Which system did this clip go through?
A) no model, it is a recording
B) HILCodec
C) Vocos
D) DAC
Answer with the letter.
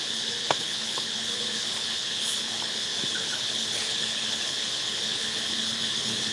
B